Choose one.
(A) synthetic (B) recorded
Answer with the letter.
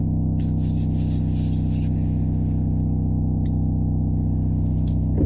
B